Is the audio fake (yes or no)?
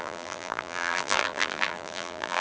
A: yes